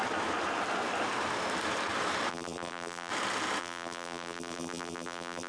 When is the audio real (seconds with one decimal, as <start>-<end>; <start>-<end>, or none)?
0.0-2.3; 3.1-3.6